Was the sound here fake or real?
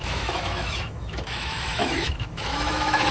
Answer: fake